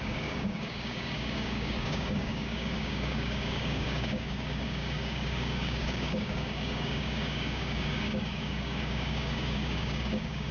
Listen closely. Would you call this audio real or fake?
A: fake